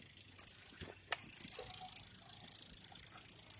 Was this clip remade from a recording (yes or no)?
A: no